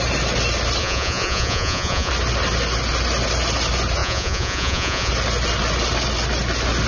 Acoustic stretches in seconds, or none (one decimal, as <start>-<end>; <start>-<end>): 0.0-0.8; 2.1-4.0; 5.1-6.9